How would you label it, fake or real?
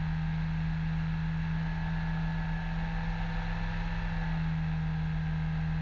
real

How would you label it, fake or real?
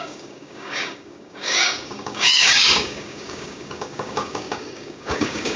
fake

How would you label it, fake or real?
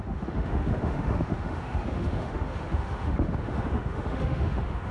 fake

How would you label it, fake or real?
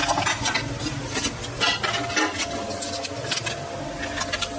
real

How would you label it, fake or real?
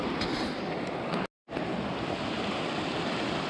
real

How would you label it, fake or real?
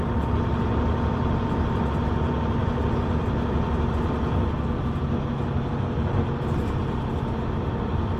real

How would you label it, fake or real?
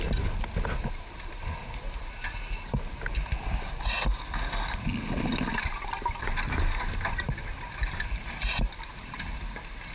real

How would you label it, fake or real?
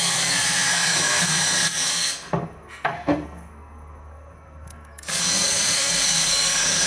fake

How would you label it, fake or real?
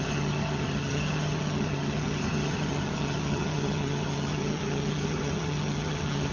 fake